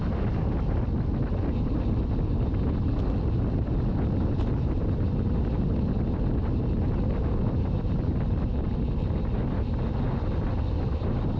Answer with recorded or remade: recorded